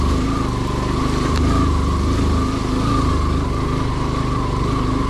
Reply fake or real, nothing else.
real